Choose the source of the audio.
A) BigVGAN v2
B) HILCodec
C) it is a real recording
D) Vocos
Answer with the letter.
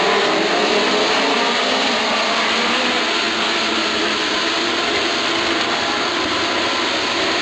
C